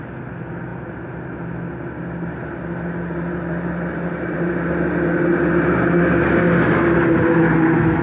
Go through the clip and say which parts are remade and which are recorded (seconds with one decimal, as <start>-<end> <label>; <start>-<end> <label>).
0.0-8.0 recorded